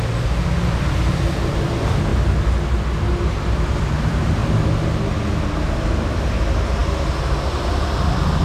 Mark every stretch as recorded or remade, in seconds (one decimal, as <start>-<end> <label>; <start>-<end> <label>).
0.0-2.1 remade; 2.1-3.3 recorded; 3.3-4.4 remade; 4.4-5.9 recorded; 5.9-8.4 remade